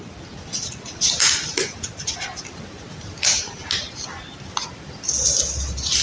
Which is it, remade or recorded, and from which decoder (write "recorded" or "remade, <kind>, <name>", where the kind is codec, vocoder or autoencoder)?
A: recorded